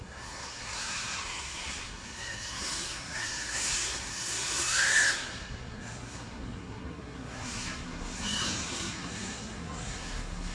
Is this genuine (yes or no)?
no